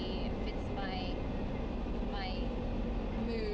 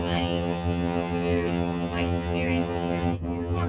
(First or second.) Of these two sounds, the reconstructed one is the second